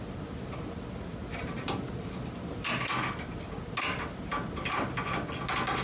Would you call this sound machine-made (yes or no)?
no